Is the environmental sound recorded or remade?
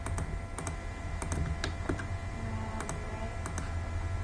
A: recorded